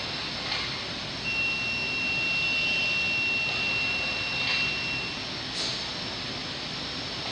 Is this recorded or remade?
recorded